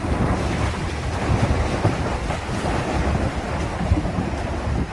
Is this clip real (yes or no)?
yes